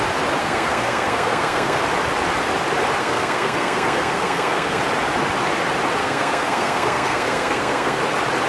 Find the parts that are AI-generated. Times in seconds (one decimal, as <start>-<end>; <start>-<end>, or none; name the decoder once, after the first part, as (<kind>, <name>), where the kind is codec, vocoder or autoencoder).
0.4-1.8 (codec, SNAC); 3.0-4.8; 6.0-8.0